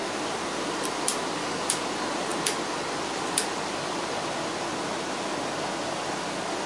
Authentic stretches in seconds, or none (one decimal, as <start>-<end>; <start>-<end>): 0.0-6.7